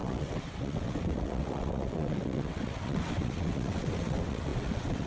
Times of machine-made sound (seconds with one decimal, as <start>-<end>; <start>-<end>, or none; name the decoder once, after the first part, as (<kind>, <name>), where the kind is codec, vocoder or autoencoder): 0.0-5.1 (vocoder, WaveNeXt)